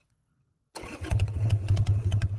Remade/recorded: remade